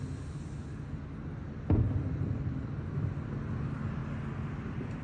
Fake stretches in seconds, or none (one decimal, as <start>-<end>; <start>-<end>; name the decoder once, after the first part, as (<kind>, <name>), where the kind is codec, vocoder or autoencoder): none